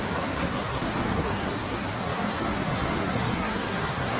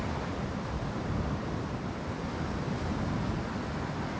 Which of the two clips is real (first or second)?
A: second